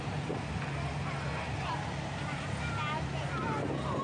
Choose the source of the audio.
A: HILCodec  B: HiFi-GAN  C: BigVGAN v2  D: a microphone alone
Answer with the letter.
D